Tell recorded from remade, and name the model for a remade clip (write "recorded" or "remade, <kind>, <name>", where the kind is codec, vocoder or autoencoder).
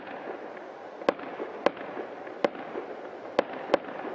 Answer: recorded